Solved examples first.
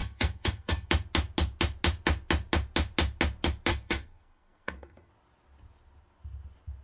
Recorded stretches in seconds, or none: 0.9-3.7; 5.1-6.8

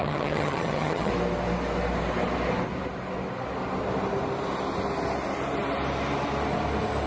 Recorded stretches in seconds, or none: 1.1-7.1

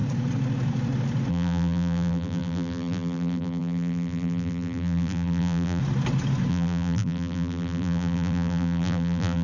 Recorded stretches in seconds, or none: 0.0-1.3; 5.8-6.5

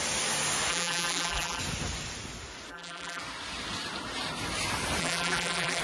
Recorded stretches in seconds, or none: 0.0-0.7; 1.6-2.7; 3.2-5.0

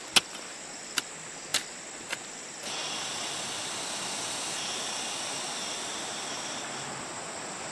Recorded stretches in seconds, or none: 0.0-7.7

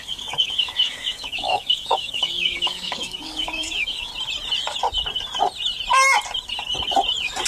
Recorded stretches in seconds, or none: 4.1-7.5

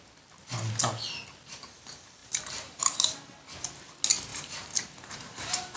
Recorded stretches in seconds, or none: 0.0-2.2; 2.8-4.3